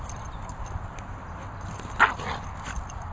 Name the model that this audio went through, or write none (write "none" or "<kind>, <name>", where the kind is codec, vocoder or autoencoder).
none